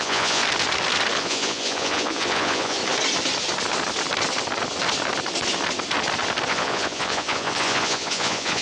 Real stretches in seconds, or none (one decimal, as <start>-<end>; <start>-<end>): 0.4-1.2; 2.8-6.5